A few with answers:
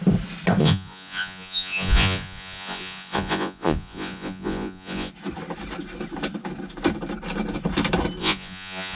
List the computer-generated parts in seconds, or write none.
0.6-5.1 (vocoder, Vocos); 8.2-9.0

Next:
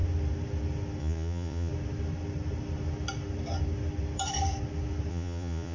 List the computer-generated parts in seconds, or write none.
1.0-1.7 (vocoder, Vocos); 5.1-5.7

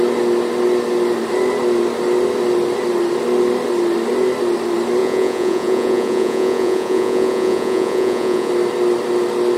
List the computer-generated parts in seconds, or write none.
5.0-8.5 (vocoder, Vocos)